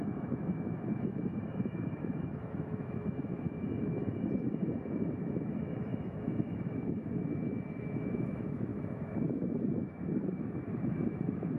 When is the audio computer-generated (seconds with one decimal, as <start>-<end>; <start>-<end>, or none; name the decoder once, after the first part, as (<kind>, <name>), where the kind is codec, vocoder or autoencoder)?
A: 0.0-11.6 (autoencoder, DAC-VAE)